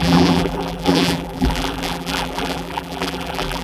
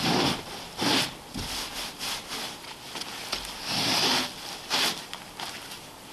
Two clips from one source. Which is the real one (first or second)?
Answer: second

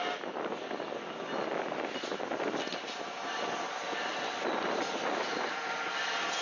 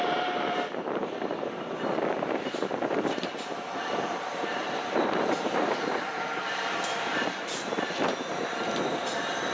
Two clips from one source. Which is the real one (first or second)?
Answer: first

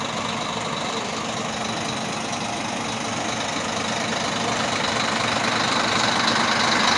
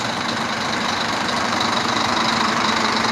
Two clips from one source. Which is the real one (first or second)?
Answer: first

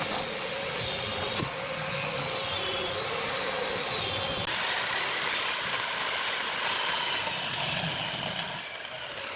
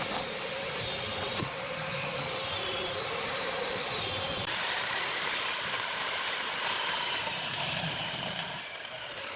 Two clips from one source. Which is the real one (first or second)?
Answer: first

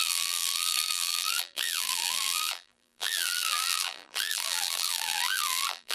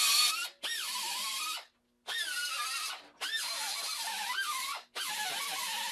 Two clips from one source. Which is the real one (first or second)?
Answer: second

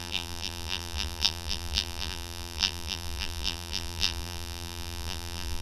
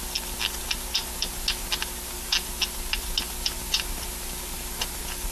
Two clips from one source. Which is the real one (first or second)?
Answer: second